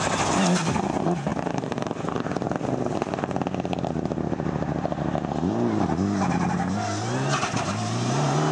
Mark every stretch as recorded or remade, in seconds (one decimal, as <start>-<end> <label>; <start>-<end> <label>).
0.0-8.5 recorded